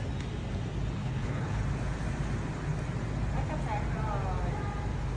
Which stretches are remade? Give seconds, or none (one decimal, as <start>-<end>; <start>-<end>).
1.0-1.6

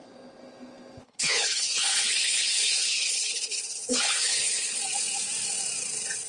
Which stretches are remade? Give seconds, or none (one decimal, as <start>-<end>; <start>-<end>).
1.0-4.8

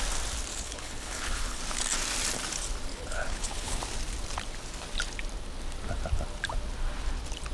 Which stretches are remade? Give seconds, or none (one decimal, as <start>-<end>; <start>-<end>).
0.5-1.6; 2.9-3.8

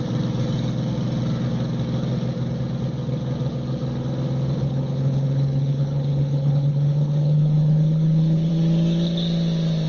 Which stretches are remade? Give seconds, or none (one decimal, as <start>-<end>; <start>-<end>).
4.6-8.5

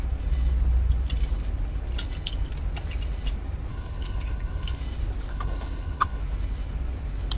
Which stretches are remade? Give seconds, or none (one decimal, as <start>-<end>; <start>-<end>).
3.7-4.8; 5.3-6.2